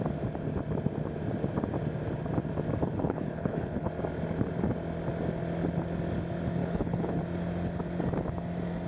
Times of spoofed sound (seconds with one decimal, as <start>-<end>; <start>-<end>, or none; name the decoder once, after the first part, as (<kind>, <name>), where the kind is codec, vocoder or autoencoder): 2.8-3.9 (codec, HILCodec); 6.6-7.2

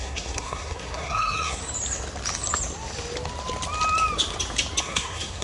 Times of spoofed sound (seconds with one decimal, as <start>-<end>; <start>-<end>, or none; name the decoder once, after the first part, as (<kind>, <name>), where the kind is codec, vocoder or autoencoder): 0.0-1.6 (codec, SNAC); 4.8-5.4